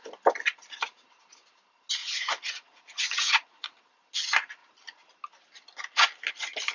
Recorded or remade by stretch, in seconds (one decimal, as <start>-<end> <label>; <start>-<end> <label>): 0.0-2.0 recorded; 2.0-3.8 remade; 3.8-6.7 recorded